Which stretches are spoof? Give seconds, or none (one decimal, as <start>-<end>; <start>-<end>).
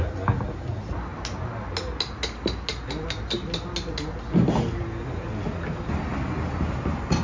none